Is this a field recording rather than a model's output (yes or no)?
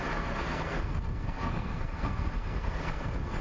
no